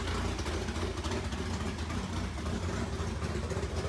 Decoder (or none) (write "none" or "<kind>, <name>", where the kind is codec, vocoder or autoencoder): none